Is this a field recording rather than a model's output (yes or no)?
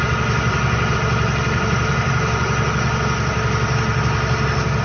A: yes